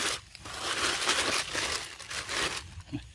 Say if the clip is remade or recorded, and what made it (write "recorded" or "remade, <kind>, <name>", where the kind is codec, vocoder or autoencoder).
recorded